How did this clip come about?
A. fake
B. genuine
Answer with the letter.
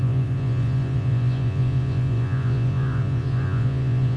A